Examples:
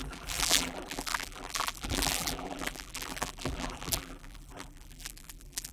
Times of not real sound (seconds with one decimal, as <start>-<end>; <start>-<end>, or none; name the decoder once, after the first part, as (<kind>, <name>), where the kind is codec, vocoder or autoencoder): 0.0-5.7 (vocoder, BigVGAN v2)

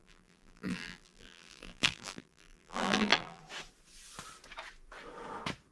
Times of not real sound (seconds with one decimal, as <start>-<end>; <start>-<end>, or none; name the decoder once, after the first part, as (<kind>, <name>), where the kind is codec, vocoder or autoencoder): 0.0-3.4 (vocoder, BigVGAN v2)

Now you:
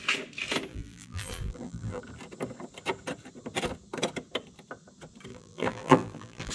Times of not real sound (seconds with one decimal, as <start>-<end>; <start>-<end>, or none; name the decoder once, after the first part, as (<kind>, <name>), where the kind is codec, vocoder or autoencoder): 0.7-2.0 (vocoder, BigVGAN v2); 5.3-6.5

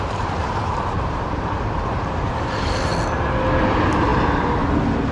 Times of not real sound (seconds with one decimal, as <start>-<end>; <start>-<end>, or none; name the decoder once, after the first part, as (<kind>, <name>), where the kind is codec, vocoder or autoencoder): 0.0-2.9 (vocoder, BigVGAN v2); 3.6-4.1